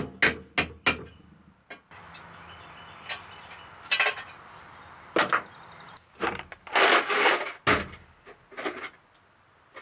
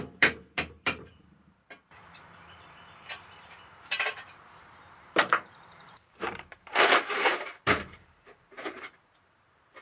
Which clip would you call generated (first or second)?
second